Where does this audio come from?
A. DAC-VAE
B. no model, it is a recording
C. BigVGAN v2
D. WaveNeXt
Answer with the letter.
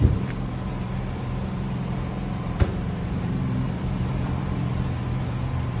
C